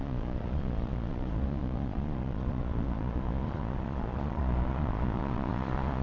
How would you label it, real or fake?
fake